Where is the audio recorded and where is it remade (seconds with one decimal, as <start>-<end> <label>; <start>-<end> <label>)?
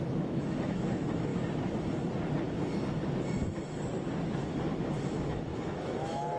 0.0-1.3 remade; 1.3-5.0 recorded; 5.0-6.4 remade